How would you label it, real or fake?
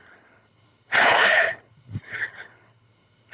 fake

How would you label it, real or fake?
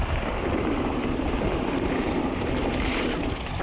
fake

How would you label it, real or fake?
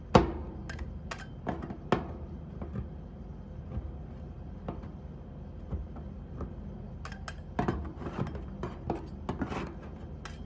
real